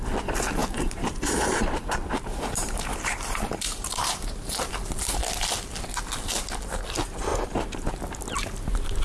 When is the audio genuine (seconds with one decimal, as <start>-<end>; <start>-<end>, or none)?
0.0-0.6; 4.7-7.3; 7.9-9.0